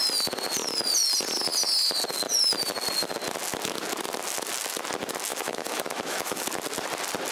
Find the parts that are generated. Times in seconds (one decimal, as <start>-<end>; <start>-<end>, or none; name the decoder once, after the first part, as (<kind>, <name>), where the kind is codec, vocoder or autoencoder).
5.3-6.4 (autoencoder, DAC-VAE)